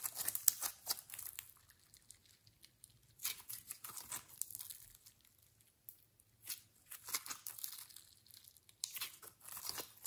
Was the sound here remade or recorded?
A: recorded